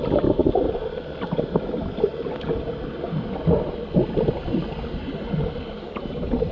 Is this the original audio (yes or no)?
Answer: yes